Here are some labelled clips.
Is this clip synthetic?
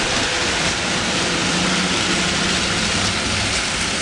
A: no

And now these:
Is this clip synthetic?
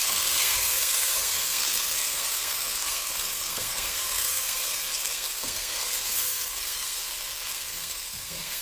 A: yes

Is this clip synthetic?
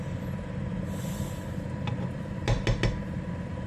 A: no